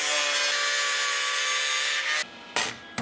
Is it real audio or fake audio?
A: real